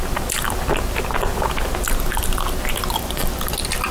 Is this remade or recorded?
recorded